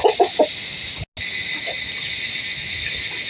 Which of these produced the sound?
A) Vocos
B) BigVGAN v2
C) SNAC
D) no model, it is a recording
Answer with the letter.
D